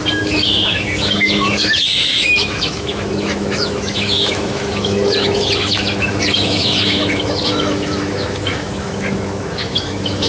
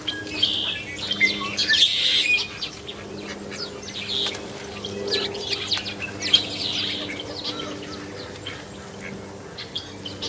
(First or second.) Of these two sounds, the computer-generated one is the first